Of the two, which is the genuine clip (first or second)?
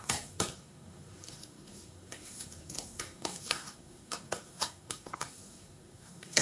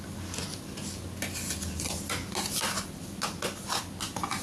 second